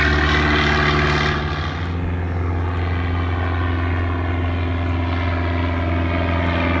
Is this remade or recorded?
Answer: recorded